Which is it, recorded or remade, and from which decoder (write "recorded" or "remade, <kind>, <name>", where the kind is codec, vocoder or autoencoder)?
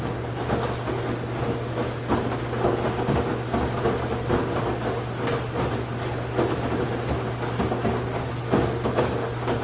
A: recorded